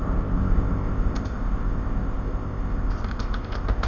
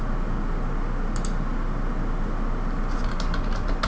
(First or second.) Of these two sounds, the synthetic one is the first